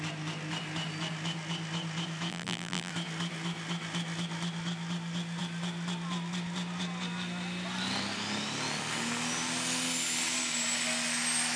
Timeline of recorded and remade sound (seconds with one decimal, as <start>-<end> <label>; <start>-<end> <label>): 0.0-2.3 recorded; 2.3-2.9 remade; 2.9-11.6 recorded